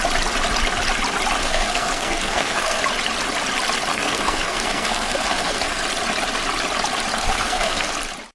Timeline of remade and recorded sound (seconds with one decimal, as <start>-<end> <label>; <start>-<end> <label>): 0.0-1.4 recorded; 1.4-2.8 remade; 2.8-3.9 recorded; 3.9-5.8 remade; 5.8-7.2 recorded; 7.2-7.9 remade; 7.9-8.3 recorded